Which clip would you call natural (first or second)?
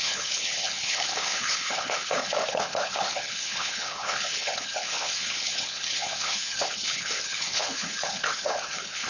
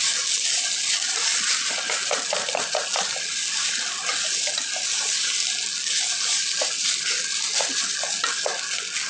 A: second